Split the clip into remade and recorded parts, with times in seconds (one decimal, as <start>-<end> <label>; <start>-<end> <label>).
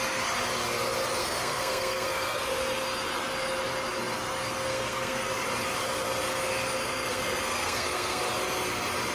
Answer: 0.0-1.2 recorded; 1.2-2.4 remade; 2.4-4.7 recorded; 4.7-5.3 remade; 5.3-6.8 recorded; 6.8-8.2 remade; 8.2-9.1 recorded